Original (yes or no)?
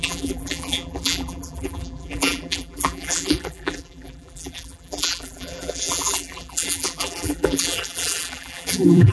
no